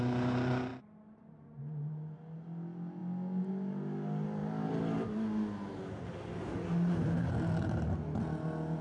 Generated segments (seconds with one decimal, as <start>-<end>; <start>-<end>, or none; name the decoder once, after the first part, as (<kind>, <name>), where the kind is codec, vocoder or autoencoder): none